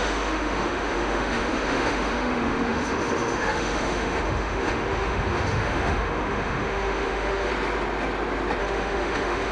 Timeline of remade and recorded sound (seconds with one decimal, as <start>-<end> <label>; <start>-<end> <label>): 0.0-7.5 remade; 7.5-8.6 recorded; 8.6-9.5 remade